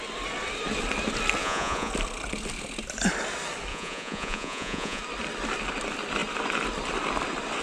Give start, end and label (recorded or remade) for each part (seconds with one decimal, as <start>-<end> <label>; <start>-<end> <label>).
0.0-1.4 recorded; 1.4-1.9 remade; 1.9-3.7 recorded; 3.7-5.0 remade; 5.0-7.6 recorded